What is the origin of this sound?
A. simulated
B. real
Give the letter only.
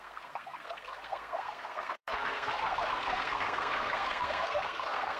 A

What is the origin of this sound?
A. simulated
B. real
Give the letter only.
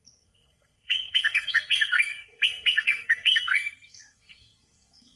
A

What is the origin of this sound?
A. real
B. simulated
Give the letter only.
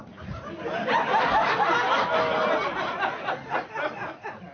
A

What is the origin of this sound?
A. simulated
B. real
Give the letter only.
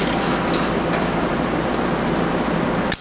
B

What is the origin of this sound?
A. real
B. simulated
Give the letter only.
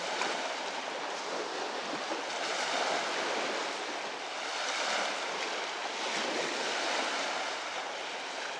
A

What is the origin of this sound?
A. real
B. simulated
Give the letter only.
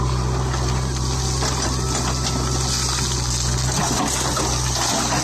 A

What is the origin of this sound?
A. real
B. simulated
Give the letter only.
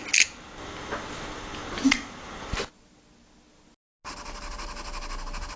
A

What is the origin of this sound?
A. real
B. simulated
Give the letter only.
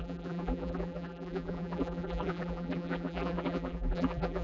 B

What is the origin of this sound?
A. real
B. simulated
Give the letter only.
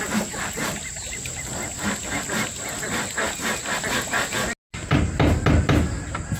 A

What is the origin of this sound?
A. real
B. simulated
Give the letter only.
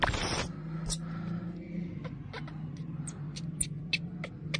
A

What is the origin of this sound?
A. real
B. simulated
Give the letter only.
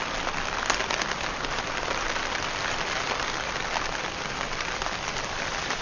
A